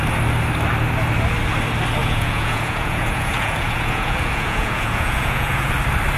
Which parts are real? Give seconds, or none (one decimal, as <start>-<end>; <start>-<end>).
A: 0.0-2.0; 5.7-6.2